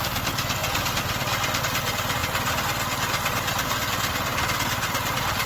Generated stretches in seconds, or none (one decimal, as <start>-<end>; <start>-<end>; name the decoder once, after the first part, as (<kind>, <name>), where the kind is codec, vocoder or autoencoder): none